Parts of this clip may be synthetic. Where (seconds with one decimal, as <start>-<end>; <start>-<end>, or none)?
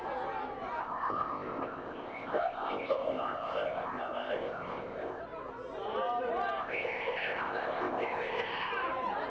0.8-5.2; 6.6-8.7